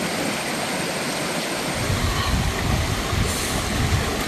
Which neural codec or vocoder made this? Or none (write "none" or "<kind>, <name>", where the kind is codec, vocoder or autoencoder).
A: none